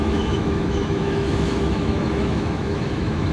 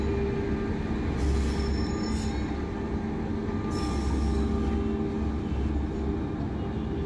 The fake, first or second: first